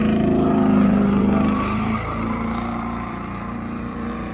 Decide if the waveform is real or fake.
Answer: fake